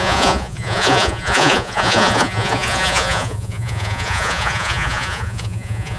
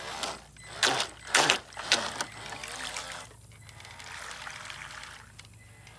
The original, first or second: second